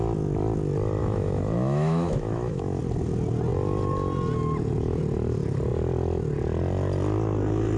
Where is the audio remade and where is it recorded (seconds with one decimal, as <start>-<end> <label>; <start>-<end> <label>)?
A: 0.0-1.0 recorded; 1.0-2.8 remade; 2.8-7.8 recorded